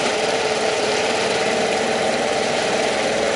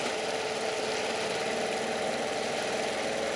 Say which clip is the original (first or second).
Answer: second